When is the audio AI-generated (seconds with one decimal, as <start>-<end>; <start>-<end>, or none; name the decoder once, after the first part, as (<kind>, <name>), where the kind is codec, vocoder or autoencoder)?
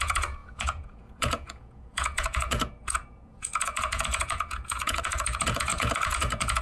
0.0-6.6 (vocoder, Vocos)